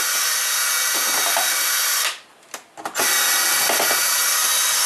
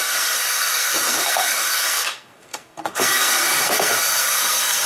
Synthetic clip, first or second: second